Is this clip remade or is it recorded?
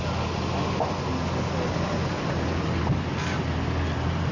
recorded